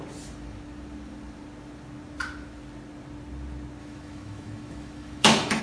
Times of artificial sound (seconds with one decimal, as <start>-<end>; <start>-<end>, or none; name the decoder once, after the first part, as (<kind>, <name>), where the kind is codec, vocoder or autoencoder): 3.8-5.6 (autoencoder, DAC-VAE)